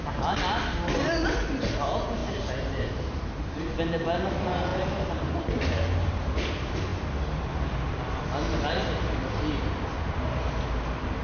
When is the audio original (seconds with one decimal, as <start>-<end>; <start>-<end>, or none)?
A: 0.0-2.2; 3.6-11.2